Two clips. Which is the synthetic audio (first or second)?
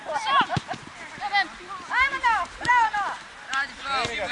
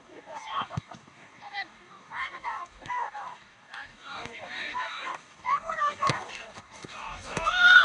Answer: second